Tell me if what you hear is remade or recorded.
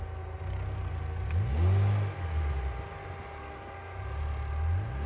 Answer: recorded